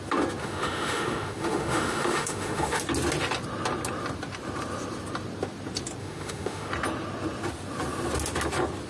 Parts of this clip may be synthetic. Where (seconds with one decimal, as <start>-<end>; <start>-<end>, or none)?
0.4-2.8; 6.0-6.7